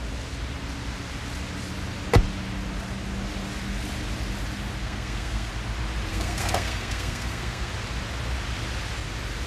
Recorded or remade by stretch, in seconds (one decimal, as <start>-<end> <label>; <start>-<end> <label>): 0.0-4.8 recorded; 4.8-5.5 remade; 5.5-6.1 recorded; 6.1-7.7 remade; 7.7-9.5 recorded